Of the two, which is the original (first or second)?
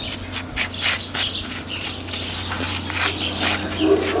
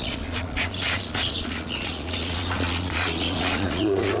first